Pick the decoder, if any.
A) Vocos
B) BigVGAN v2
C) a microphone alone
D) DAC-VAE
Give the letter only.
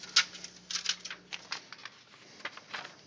C